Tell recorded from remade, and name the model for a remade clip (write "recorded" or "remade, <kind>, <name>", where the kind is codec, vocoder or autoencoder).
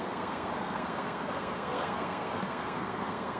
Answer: remade, codec, SNAC